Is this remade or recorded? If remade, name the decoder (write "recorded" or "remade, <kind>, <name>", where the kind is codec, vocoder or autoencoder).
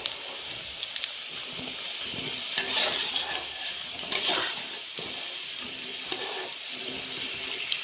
remade, vocoder, BigVGAN v2